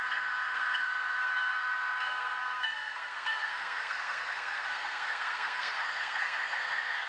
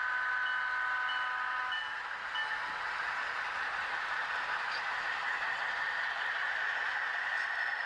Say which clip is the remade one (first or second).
first